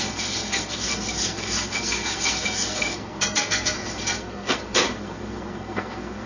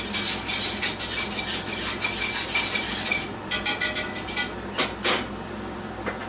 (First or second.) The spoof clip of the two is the first